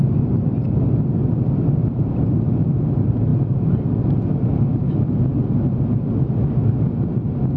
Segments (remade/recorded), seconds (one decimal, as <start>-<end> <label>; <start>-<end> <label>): 0.0-7.6 recorded